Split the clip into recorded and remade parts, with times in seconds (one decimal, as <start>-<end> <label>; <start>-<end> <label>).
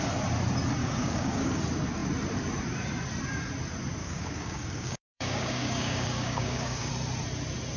0.0-0.8 recorded; 0.8-1.6 remade; 1.6-4.0 recorded; 4.0-6.9 remade; 6.9-7.8 recorded